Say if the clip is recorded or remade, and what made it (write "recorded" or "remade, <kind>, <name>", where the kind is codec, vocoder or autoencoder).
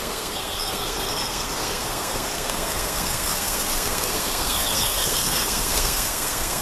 remade, codec, SNAC